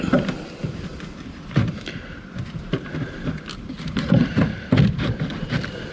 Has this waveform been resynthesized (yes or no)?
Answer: yes